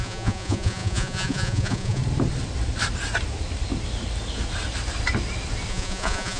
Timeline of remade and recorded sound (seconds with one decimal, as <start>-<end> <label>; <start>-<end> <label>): 0.0-2.0 remade; 2.0-5.7 recorded; 5.7-6.4 remade